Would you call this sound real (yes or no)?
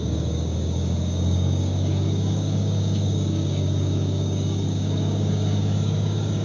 no